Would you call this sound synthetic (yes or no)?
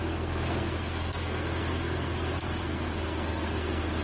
yes